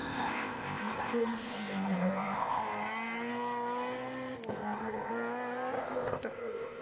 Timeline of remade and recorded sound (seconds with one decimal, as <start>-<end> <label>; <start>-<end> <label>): 0.0-2.6 remade; 2.6-4.5 recorded; 4.5-5.1 remade; 5.1-5.8 recorded; 5.8-6.8 remade